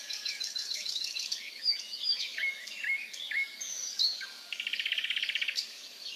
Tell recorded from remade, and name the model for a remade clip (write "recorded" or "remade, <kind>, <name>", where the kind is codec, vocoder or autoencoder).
remade, codec, DAC